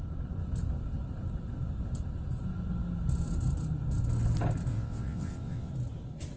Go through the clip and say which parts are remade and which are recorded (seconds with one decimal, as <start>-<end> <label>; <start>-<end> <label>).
0.0-4.7 recorded; 4.7-5.7 remade; 5.7-6.4 recorded